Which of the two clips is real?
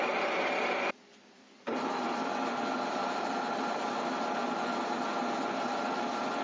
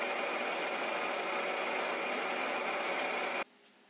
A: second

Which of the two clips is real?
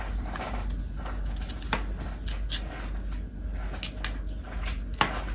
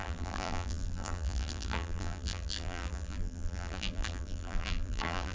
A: first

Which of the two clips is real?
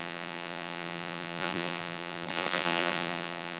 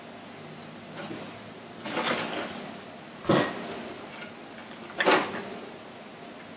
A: second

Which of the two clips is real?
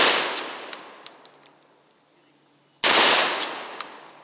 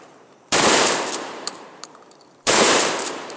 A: first